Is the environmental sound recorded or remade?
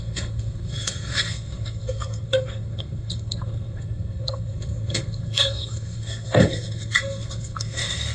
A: remade